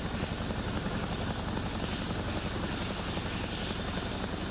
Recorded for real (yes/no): yes